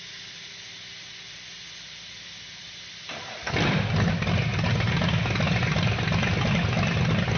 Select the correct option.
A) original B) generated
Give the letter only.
A